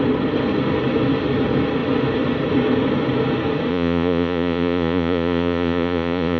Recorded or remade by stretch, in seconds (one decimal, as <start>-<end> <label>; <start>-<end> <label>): 0.0-3.7 recorded; 3.7-6.4 remade